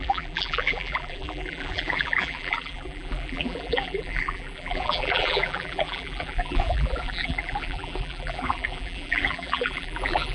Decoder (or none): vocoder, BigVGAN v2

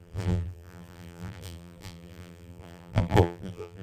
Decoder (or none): vocoder, BigVGAN v2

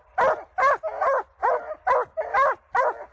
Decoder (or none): none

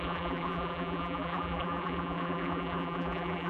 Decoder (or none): vocoder, BigVGAN v2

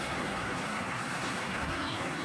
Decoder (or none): codec, SNAC